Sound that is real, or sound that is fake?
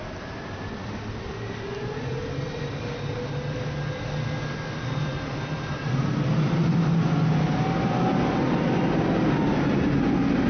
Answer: real